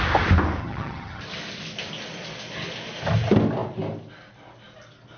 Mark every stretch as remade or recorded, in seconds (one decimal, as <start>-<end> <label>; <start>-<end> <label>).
0.0-0.6 recorded; 0.6-1.2 remade; 1.2-5.2 recorded